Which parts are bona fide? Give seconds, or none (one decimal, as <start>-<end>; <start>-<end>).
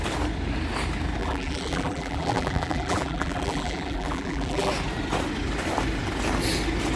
0.0-1.2; 4.7-7.0